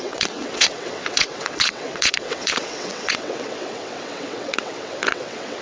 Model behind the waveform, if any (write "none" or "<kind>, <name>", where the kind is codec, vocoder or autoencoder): vocoder, WaveNeXt